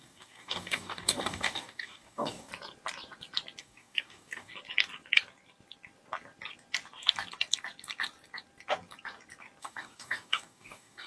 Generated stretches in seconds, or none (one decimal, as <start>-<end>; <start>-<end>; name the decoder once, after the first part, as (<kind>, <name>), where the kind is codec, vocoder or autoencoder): 0.0-2.5 (codec, DAC); 3.6-4.5; 9.6-11.1

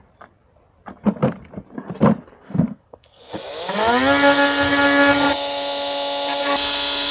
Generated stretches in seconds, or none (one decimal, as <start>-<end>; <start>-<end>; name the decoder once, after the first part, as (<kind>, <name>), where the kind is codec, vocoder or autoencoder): 2.4-3.3 (codec, SNAC)